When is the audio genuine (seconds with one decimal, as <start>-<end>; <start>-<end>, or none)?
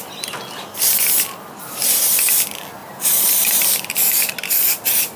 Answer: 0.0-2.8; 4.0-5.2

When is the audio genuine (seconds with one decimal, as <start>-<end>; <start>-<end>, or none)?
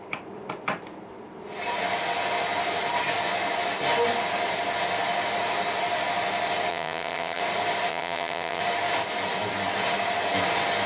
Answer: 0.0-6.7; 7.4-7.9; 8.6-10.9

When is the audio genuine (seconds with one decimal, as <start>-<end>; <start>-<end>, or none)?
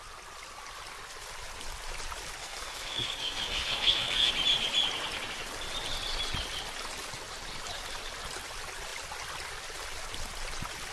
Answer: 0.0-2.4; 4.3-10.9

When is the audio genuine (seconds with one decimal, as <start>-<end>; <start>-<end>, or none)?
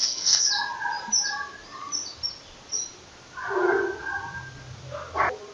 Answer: 0.5-5.5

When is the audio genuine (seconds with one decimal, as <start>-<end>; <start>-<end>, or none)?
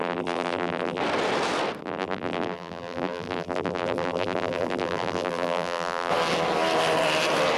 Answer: 1.0-1.8; 6.1-7.6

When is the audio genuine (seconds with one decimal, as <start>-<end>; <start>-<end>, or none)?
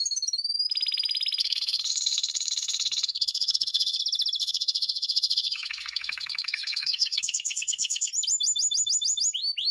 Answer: 0.0-1.4; 4.0-4.4; 8.1-9.7